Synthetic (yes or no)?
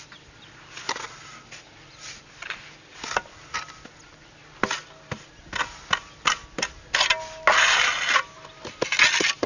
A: no